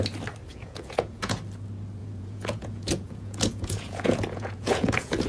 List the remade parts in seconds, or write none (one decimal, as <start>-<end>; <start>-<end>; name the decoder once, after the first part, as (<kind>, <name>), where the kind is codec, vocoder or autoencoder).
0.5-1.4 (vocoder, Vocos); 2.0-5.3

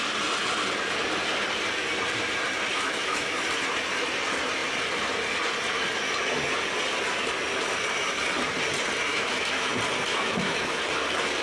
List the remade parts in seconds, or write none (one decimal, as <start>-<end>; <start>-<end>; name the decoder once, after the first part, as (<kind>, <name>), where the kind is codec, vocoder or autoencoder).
2.7-3.4 (autoencoder, DAC-VAE); 9.1-9.7; 10.1-10.8

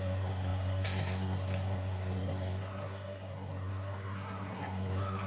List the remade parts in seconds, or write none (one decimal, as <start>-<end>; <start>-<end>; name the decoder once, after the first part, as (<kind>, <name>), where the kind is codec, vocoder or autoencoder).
0.0-5.3 (codec, SNAC)

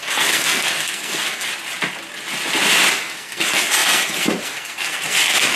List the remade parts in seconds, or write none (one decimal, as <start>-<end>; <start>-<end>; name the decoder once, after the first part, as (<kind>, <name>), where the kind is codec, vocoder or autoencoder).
0.0-1.5 (codec, SNAC); 2.9-5.6

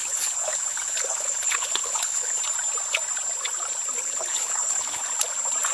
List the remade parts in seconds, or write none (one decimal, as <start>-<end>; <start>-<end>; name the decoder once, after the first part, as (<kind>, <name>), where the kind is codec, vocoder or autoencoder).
0.0-2.4 (codec, HILCodec); 4.0-5.0

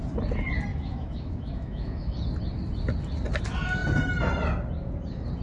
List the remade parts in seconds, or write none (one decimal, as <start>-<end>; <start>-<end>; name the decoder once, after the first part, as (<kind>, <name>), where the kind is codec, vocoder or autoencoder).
0.7-2.2 (autoencoder, DAC-VAE)

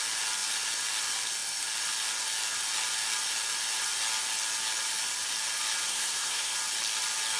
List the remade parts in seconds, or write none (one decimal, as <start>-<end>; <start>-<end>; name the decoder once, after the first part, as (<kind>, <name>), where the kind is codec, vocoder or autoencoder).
5.9-6.5 (codec, SNAC)

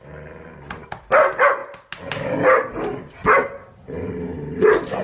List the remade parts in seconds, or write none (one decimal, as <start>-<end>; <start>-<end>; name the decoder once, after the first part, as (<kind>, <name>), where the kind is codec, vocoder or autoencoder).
none